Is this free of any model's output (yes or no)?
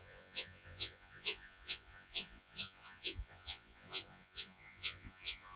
no